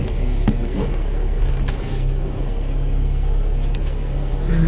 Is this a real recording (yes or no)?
no